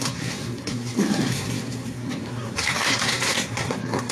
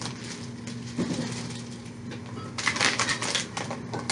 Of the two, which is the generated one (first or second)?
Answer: first